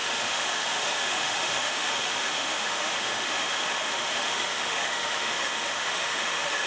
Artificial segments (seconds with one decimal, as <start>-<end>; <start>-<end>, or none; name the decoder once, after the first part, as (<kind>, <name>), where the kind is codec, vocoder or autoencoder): 0.0-6.7 (autoencoder, DAC-VAE)